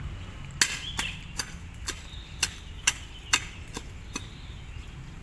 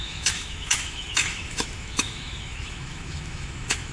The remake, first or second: second